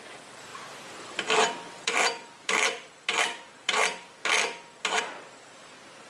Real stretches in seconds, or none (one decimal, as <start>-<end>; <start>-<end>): 0.0-0.5; 4.2-6.1

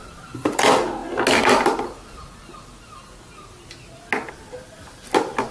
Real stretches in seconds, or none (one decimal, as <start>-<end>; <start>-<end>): 0.0-5.5

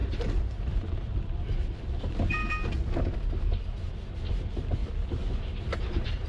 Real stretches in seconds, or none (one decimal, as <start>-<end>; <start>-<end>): 2.4-4.3; 4.8-5.6